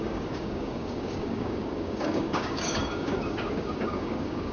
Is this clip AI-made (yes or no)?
yes